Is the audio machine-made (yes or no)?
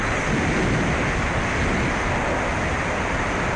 no